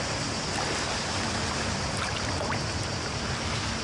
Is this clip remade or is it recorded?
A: recorded